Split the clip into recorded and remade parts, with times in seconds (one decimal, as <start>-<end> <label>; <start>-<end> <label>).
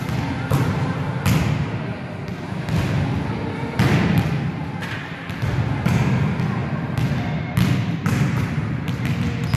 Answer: 0.0-9.6 recorded